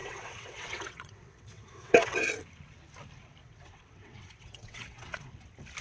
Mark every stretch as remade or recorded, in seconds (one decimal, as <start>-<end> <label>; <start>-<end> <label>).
0.0-2.2 remade; 2.2-3.4 recorded; 3.4-5.3 remade; 5.3-5.8 recorded